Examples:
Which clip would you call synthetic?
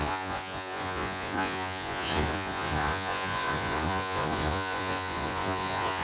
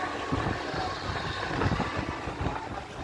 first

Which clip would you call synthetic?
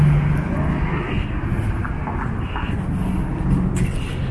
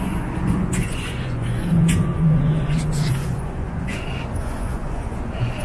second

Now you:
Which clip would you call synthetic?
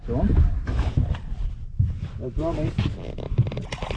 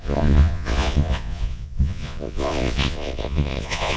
second